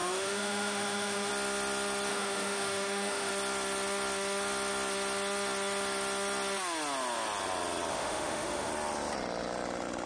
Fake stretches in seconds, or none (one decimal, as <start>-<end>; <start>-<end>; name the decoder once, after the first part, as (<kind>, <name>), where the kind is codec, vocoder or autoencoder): 0.0-1.3 (autoencoder, DAC-VAE); 2.1-3.3; 7.9-8.7